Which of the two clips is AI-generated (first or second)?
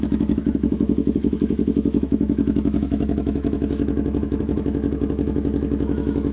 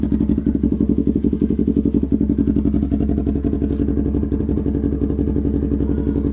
first